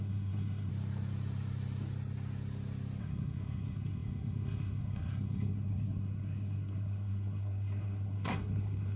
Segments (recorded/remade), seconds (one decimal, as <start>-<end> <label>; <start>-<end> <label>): 0.0-0.7 remade; 0.7-3.0 recorded; 3.0-9.0 remade